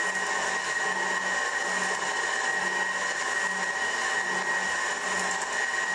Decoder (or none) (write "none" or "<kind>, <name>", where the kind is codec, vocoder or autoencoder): none